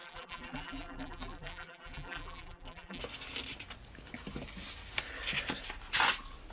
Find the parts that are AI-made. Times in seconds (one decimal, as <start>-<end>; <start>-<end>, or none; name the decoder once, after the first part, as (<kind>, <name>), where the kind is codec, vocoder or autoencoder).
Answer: 0.0-3.0 (vocoder, BigVGAN v2)